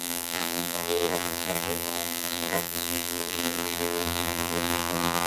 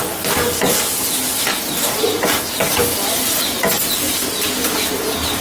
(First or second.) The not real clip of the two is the first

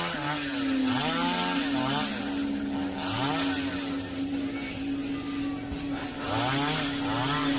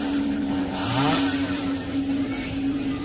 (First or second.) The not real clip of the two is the second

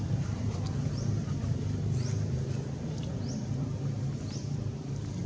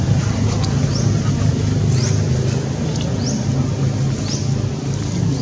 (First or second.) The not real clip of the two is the first